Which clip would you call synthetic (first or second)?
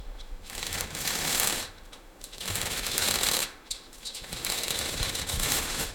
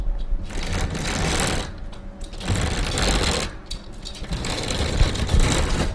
first